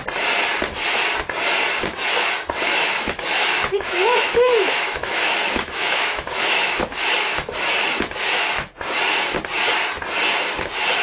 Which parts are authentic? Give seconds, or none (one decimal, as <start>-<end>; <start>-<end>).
0.0-2.7; 7.7-11.0